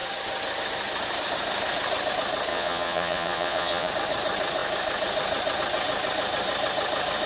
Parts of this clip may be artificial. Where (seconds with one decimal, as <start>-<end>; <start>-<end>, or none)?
2.5-3.9

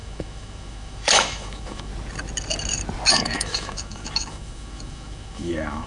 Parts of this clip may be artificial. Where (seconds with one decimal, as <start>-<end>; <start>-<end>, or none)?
0.0-1.9; 3.1-5.9

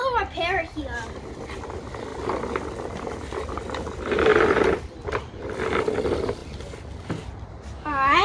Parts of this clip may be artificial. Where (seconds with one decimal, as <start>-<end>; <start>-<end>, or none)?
4.3-5.4

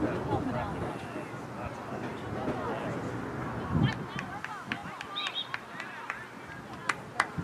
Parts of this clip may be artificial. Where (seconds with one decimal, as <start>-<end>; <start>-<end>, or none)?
none